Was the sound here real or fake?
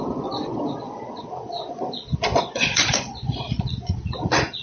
fake